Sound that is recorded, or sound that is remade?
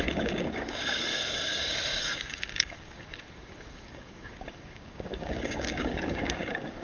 remade